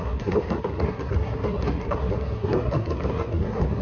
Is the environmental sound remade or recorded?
remade